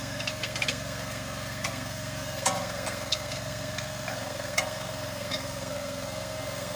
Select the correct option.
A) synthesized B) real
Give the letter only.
A